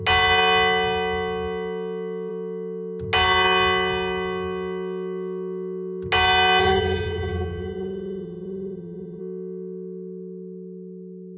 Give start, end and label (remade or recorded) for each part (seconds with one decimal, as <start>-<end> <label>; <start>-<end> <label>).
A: 0.0-6.6 recorded; 6.6-9.2 remade; 9.2-11.4 recorded